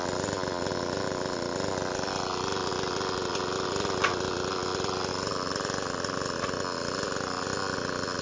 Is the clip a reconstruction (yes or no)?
no